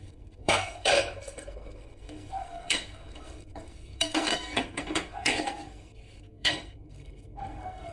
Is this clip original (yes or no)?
no